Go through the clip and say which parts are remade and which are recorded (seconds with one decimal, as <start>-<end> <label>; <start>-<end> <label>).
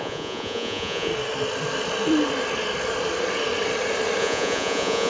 0.0-1.1 remade; 1.1-4.2 recorded; 4.2-5.1 remade